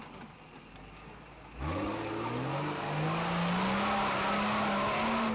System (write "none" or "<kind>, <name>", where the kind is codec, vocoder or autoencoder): none